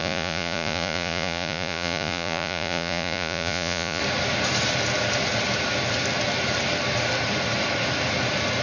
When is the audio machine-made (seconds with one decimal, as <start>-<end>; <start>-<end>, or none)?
0.0-4.0

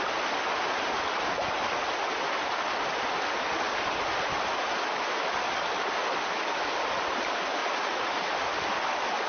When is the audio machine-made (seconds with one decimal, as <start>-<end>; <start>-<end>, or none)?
7.6-8.3

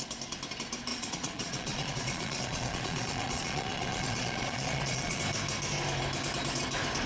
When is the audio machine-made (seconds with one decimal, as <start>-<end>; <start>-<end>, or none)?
0.9-5.2